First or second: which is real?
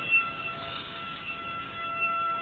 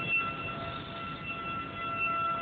second